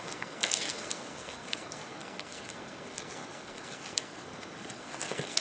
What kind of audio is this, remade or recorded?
remade